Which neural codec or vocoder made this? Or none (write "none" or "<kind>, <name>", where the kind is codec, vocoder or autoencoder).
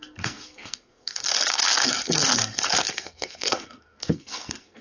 codec, SNAC